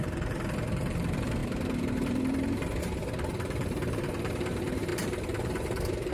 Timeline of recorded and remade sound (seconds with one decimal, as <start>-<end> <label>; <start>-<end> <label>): 0.0-6.1 remade

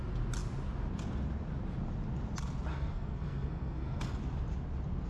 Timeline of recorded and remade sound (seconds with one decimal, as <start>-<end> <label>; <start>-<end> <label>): 0.0-2.7 recorded; 2.7-4.2 remade; 4.2-5.1 recorded